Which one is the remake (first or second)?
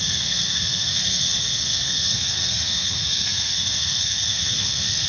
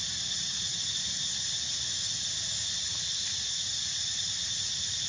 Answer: first